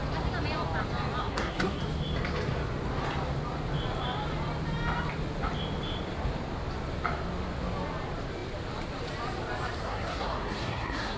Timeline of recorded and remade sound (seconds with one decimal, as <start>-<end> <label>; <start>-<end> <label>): 0.0-1.2 recorded; 1.2-1.8 remade; 1.8-9.8 recorded; 9.8-11.2 remade

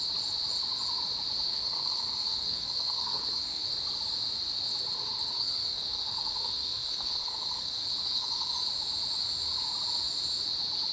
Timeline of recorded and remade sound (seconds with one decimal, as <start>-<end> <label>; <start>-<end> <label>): 0.0-1.5 recorded; 1.5-3.6 remade; 3.6-5.4 recorded; 5.4-8.5 remade; 8.5-10.9 recorded

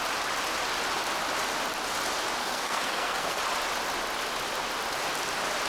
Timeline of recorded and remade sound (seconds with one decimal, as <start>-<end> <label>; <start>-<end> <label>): 0.0-2.4 recorded; 2.4-3.4 remade; 3.4-5.7 recorded

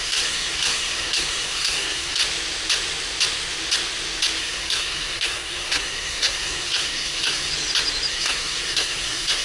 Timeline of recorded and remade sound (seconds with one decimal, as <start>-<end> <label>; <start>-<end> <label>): 0.0-2.2 remade; 2.2-4.4 recorded; 4.4-7.5 remade; 7.5-8.1 recorded; 8.1-9.4 remade

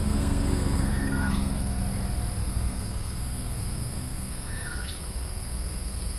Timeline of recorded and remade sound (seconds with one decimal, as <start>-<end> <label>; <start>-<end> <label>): 0.0-1.8 remade; 1.8-2.4 recorded; 2.4-6.2 remade

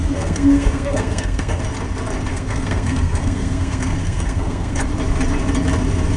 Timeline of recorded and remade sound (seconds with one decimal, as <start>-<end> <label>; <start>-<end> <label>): 0.0-1.6 remade; 1.6-2.3 recorded; 2.3-4.9 remade; 4.9-6.2 recorded

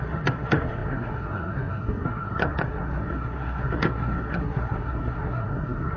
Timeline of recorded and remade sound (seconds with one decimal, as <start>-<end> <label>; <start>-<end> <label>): 0.0-6.0 remade